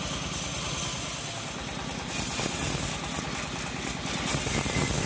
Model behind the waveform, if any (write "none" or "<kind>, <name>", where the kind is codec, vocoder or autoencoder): none